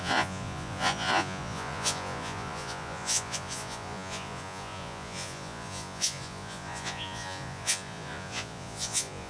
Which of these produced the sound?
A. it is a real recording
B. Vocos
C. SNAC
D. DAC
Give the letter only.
B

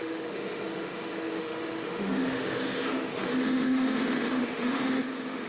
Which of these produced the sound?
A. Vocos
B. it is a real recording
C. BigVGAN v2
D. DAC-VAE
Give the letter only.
D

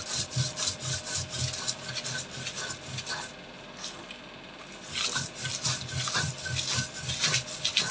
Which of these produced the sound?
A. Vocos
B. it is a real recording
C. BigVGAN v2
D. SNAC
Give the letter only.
B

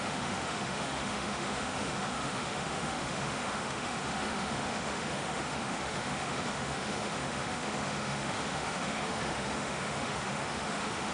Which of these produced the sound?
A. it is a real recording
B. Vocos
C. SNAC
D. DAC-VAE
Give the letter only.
D